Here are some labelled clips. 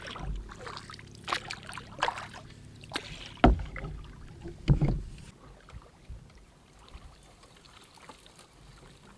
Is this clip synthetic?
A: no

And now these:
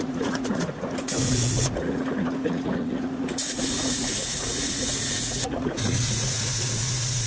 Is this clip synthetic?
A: yes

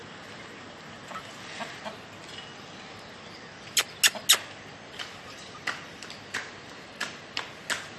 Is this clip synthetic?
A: no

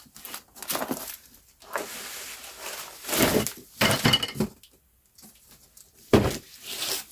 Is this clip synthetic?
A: no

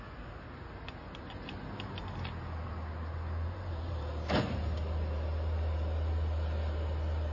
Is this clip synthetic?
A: no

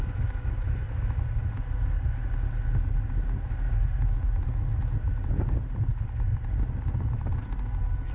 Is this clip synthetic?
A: no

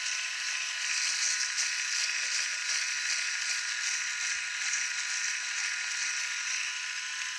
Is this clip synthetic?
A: no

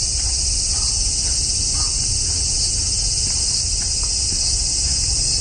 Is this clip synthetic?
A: no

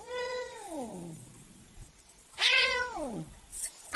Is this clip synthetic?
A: yes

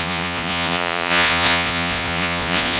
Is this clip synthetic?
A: yes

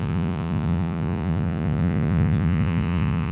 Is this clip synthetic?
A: yes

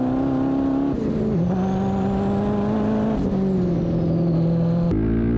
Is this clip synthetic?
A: no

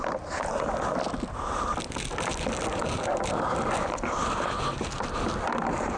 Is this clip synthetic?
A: no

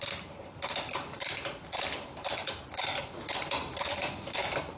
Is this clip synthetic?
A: no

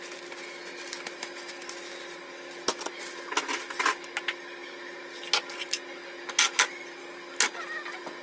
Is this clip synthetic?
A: no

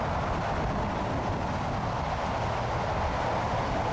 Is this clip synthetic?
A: no